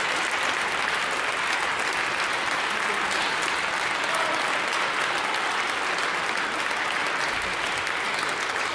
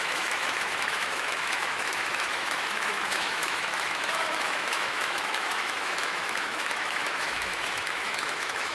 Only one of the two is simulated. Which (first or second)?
second